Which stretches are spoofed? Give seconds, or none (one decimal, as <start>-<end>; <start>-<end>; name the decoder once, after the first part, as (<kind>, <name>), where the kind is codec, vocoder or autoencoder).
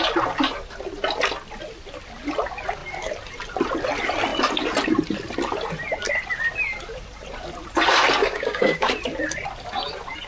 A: 8.2-8.9 (codec, DAC)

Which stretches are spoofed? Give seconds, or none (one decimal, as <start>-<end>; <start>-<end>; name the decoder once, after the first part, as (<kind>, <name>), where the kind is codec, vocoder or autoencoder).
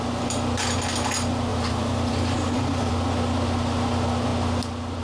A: 1.5-2.9 (vocoder, BigVGAN v2)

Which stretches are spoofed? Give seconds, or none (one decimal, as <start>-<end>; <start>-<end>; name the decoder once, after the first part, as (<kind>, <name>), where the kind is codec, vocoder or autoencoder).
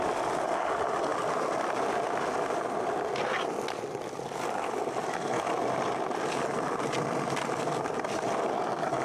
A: none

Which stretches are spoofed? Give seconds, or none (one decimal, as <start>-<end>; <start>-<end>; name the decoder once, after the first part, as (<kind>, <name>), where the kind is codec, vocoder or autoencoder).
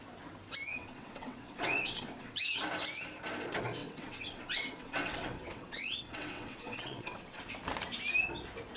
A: 0.7-2.4 (vocoder, WaveNeXt); 3.8-7.4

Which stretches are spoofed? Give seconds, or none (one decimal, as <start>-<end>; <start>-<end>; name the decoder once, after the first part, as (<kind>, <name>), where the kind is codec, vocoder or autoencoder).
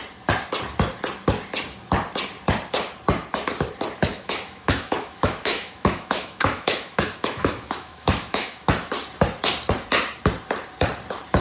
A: 4.1-8.9 (autoencoder, DAC-VAE)